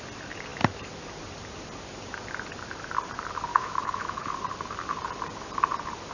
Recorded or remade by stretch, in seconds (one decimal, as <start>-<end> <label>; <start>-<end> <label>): 0.0-3.5 recorded; 3.5-4.3 remade; 4.3-6.1 recorded